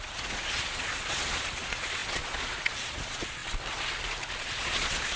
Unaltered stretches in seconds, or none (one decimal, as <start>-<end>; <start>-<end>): 3.4-4.4